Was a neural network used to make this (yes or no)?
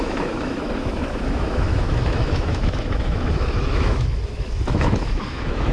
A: yes